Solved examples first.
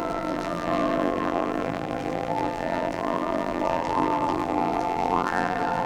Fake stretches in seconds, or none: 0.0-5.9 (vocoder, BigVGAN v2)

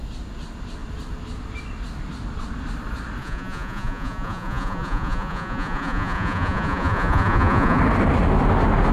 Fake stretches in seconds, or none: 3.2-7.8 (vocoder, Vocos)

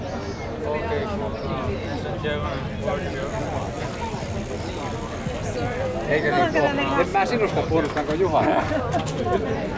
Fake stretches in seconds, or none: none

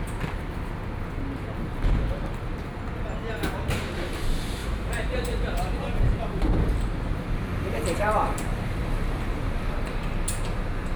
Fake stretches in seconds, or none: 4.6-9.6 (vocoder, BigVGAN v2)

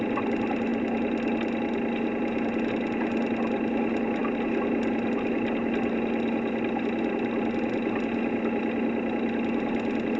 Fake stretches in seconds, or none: none

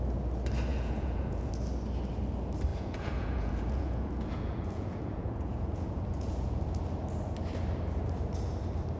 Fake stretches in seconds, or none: 0.7-1.5 (vocoder, Vocos); 2.7-6.6

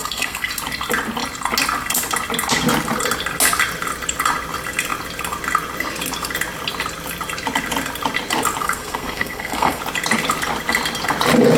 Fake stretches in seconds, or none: 0.0-0.5 (codec, SNAC); 8.6-9.8

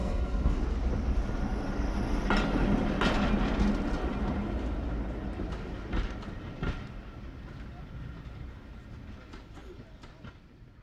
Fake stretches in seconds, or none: 0.0-0.6 (codec, SNAC)